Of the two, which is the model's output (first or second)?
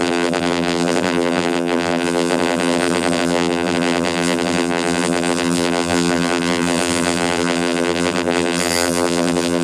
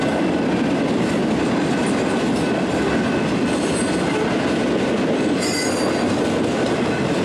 first